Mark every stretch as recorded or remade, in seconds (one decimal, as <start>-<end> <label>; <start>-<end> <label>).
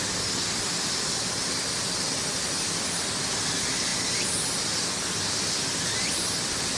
0.0-6.8 recorded